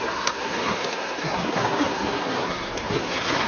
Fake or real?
fake